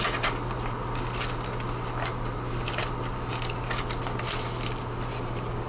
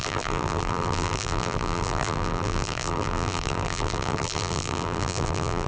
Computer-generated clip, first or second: second